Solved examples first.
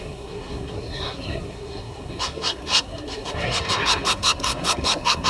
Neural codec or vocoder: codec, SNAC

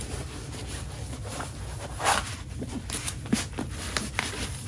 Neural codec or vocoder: none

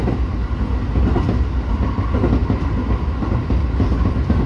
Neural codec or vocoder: none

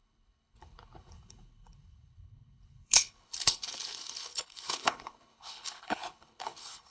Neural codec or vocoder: codec, HILCodec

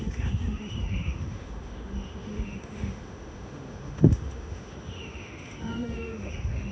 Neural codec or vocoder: autoencoder, DAC-VAE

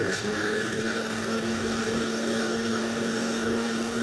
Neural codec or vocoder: codec, DAC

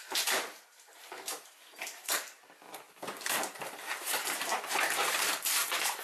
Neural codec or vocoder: vocoder, BigVGAN v2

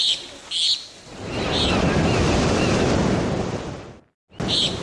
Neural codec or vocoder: none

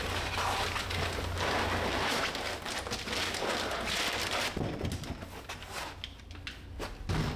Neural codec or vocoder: none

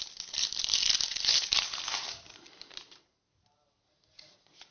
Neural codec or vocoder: none